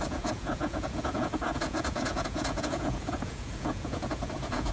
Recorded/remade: remade